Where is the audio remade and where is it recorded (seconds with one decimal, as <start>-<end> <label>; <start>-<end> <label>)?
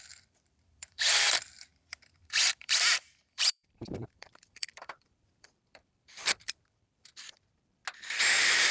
0.0-7.8 remade; 7.8-8.7 recorded